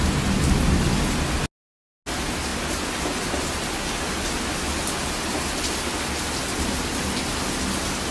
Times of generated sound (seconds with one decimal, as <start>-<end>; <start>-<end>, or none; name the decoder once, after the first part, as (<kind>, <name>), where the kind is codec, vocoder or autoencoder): none